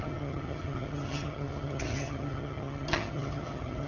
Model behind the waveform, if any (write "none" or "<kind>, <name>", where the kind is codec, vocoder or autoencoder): vocoder, HiFi-GAN